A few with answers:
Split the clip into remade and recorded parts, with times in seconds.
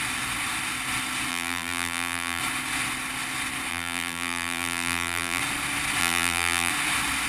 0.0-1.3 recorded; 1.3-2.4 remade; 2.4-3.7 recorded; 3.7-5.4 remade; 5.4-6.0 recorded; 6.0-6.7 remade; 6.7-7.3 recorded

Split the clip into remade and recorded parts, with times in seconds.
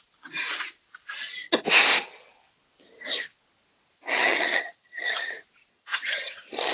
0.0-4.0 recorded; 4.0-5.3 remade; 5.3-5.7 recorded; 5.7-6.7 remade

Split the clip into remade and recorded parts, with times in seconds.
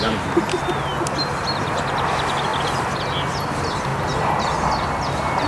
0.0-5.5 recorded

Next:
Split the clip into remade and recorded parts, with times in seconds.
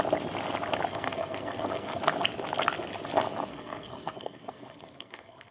0.0-0.9 recorded; 0.9-2.0 remade; 2.0-3.5 recorded; 3.5-5.5 remade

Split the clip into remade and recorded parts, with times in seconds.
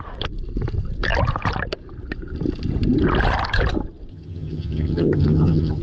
0.0-4.1 recorded; 4.1-5.8 remade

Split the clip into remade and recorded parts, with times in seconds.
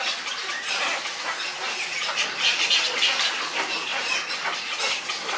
0.0-5.4 recorded